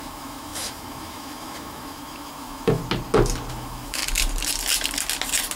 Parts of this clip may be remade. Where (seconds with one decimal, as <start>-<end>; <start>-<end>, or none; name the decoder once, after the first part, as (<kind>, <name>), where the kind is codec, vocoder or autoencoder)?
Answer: 0.0-2.8 (autoencoder, DAC-VAE); 3.5-4.0